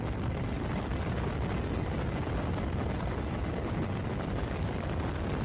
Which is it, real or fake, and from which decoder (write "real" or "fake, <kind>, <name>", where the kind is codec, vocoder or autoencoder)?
real